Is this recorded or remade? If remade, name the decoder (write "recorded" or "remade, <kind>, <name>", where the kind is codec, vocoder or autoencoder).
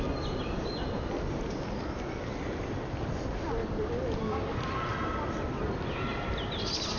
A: recorded